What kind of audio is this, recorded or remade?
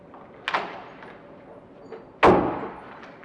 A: recorded